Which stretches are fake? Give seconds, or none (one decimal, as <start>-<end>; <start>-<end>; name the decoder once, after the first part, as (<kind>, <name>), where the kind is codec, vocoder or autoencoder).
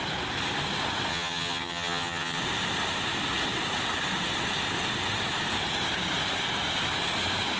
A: 1.1-2.4 (vocoder, HiFi-GAN)